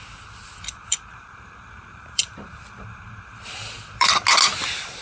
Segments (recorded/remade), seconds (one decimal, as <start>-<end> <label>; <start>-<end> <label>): 0.0-1.1 recorded; 1.1-4.1 remade; 4.1-5.0 recorded